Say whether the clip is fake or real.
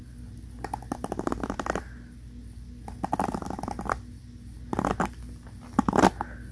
real